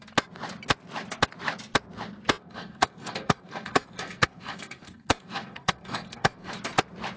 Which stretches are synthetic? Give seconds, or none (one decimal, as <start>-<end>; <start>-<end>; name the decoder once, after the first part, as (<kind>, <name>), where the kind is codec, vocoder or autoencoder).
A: 2.4-6.5 (codec, SNAC)